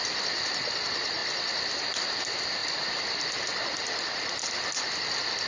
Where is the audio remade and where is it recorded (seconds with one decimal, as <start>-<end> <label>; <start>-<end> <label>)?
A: 0.0-5.5 recorded